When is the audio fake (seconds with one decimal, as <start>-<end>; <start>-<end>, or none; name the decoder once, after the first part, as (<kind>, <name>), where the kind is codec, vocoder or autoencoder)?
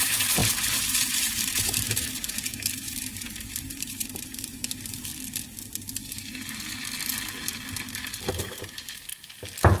0.0-5.1 (vocoder, BigVGAN v2); 8.3-9.1